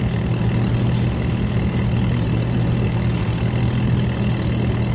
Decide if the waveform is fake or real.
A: real